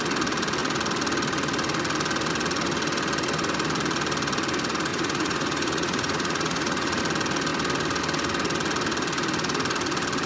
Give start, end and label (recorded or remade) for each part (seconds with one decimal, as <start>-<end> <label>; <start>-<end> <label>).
0.0-4.9 recorded; 4.9-7.0 remade; 7.0-10.3 recorded